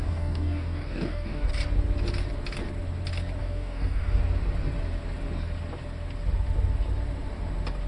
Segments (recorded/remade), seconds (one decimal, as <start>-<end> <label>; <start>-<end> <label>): 0.0-1.5 remade; 1.5-3.4 recorded; 3.4-4.2 remade; 4.2-7.9 recorded